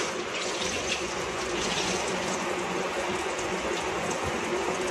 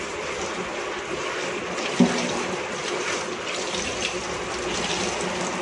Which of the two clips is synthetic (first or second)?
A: first